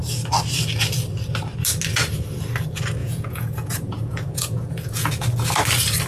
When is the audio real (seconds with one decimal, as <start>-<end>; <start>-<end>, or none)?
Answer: 0.0-3.0; 5.1-6.1